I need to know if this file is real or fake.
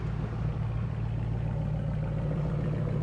real